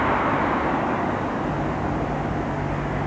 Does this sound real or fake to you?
real